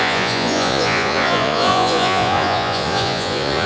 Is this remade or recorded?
remade